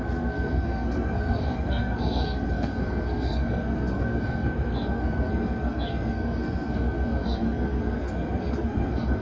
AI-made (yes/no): yes